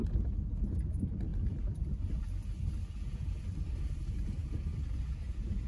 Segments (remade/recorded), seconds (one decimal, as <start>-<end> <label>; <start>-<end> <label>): 0.0-5.7 recorded